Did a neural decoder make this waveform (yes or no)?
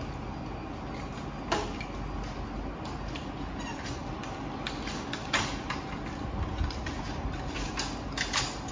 no